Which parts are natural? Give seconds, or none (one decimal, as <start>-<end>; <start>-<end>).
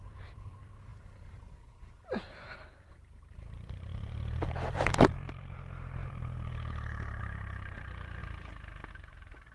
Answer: 8.2-8.9